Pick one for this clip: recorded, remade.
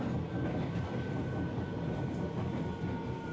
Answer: recorded